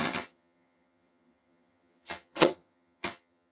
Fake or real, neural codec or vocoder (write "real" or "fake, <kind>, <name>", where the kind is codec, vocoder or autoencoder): fake, vocoder, HiFi-GAN